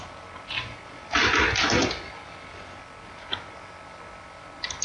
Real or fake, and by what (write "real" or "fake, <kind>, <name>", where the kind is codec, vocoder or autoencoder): real